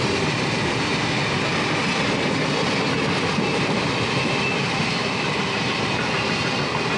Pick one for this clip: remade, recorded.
recorded